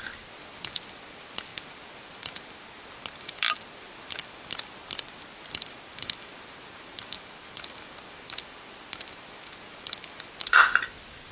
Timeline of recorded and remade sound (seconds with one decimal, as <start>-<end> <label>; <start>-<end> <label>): 0.0-11.3 recorded